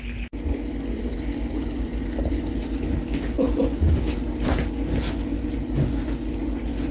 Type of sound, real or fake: real